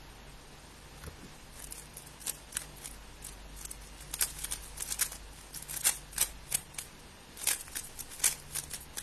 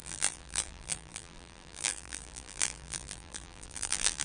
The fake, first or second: second